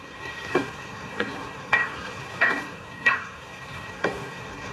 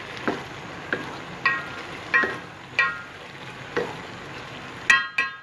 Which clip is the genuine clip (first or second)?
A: second